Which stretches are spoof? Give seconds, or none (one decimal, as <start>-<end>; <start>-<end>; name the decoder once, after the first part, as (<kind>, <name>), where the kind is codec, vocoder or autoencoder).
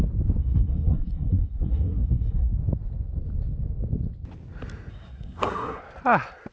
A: 0.4-2.5 (codec, SNAC); 4.9-5.8